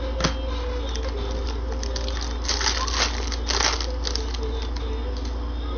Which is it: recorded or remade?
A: recorded